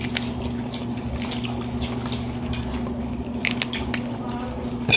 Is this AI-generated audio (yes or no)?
no